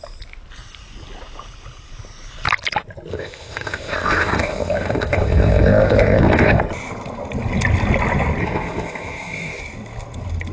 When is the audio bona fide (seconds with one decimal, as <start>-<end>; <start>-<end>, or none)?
0.0-3.1; 6.6-8.4; 9.6-10.5